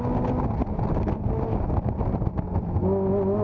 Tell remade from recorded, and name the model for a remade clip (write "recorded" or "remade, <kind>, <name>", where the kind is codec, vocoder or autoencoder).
recorded